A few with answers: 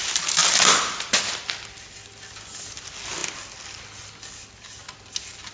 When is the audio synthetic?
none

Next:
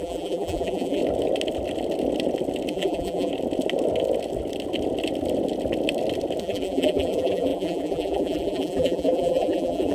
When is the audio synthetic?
0.0-1.0 (vocoder, BigVGAN v2); 2.7-3.3; 6.4-9.9

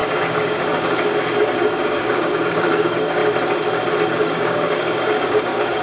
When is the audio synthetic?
0.0-3.2 (codec, DAC); 4.2-5.8

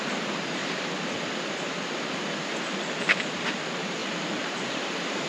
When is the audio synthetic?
0.0-0.6 (vocoder, BigVGAN v2); 3.3-5.3